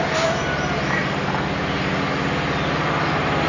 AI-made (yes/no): no